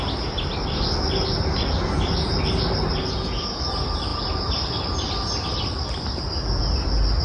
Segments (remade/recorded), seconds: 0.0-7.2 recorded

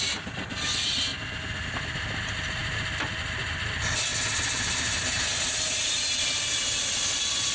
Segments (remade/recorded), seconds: 0.0-7.5 recorded

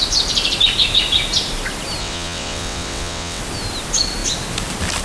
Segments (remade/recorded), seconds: 0.0-2.0 recorded; 2.0-3.4 remade; 3.4-5.0 recorded

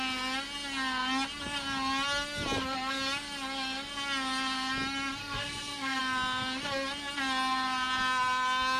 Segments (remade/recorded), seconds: 0.0-5.2 recorded; 5.2-6.0 remade; 6.0-8.8 recorded

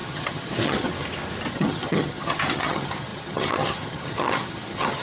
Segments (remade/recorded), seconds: 0.0-0.9 remade; 0.9-1.5 recorded; 1.5-5.0 remade

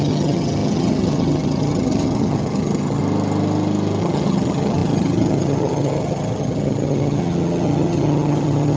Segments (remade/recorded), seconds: 0.0-3.0 remade; 3.0-4.0 recorded; 4.0-8.8 remade

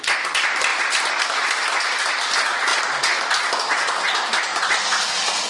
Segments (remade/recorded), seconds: 0.0-5.5 recorded